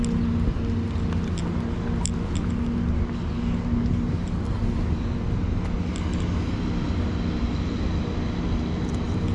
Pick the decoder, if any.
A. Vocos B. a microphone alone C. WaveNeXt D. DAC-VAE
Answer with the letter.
B